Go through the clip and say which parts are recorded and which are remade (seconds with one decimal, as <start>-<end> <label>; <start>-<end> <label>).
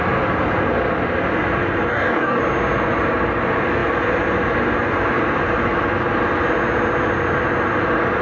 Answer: 0.0-1.9 recorded; 1.9-2.4 remade; 2.4-8.2 recorded